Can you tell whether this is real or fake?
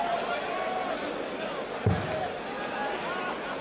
real